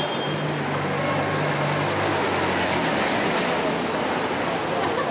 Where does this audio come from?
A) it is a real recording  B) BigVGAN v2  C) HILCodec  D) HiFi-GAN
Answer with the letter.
A